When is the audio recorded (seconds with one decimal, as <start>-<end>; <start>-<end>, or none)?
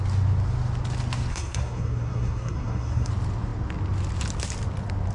0.0-1.3; 3.1-5.1